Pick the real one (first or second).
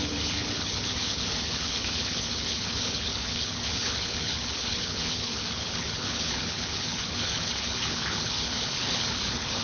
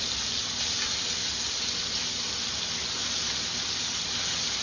second